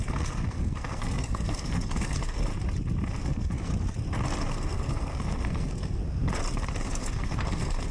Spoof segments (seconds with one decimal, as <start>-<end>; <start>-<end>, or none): 0.0-2.5; 3.2-3.7; 4.5-6.0; 6.8-7.9